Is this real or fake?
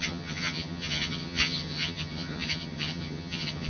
fake